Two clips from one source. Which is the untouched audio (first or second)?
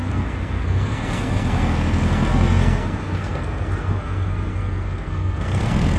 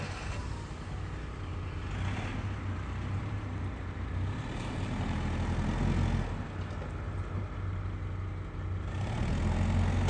second